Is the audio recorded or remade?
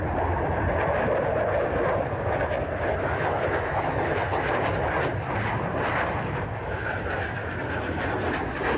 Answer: recorded